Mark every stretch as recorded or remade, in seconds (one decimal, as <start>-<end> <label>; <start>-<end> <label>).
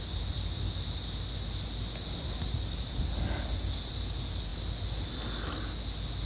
0.0-6.3 recorded